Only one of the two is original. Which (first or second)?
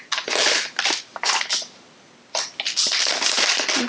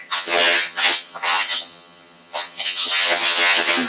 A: first